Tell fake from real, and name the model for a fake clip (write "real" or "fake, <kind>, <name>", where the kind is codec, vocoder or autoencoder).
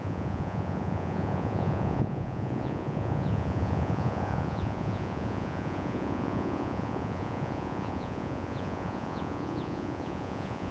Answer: fake, vocoder, Vocos